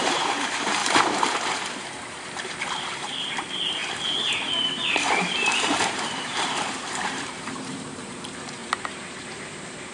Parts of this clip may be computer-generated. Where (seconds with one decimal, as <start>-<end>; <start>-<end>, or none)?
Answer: 0.0-9.9